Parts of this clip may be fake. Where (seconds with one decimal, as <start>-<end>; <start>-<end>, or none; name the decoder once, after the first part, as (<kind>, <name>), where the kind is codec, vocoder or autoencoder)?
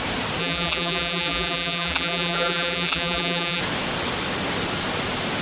0.4-3.6 (vocoder, BigVGAN v2)